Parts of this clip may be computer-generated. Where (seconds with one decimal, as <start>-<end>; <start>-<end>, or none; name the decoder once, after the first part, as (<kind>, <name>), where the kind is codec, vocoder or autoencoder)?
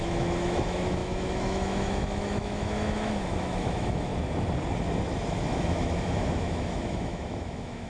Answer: 0.0-4.1 (autoencoder, DAC-VAE); 5.3-7.9